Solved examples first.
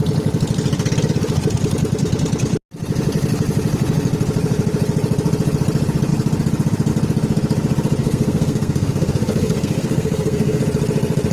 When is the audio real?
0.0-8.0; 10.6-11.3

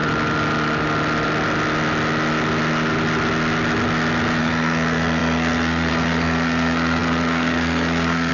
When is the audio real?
0.0-4.4

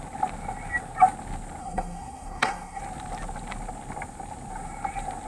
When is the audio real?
0.0-1.6; 2.8-5.3

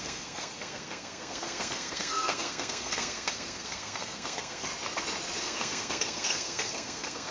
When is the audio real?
4.7-5.4

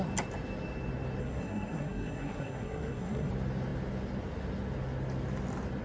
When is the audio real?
0.0-1.2; 3.3-5.8